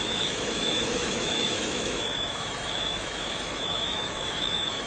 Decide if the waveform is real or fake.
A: fake